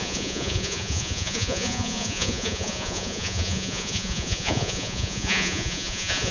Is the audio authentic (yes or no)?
no